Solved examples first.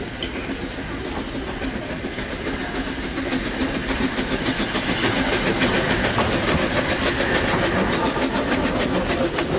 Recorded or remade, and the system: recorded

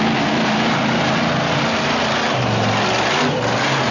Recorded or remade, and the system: recorded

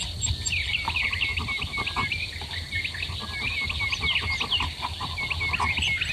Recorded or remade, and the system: recorded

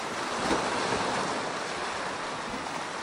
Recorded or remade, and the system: recorded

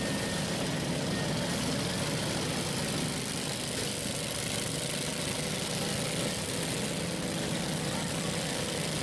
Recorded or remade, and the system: recorded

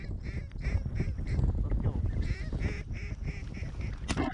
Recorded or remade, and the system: recorded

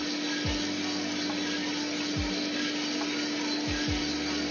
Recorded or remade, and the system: recorded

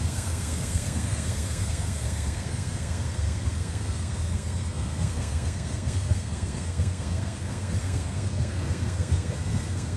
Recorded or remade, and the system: remade, codec, SNAC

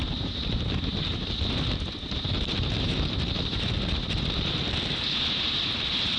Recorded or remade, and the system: remade, vocoder, BigVGAN v2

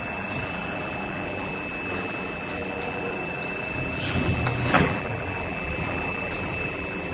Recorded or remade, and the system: remade, vocoder, BigVGAN v2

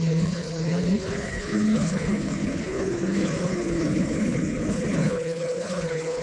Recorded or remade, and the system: remade, codec, HILCodec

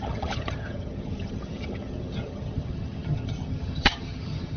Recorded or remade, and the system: remade, vocoder, HiFi-GAN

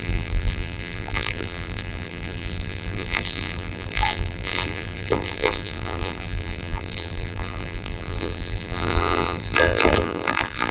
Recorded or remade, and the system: remade, vocoder, BigVGAN v2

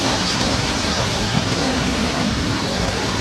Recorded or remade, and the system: remade, codec, SNAC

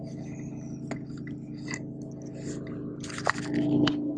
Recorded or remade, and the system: recorded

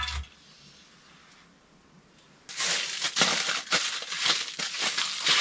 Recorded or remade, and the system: recorded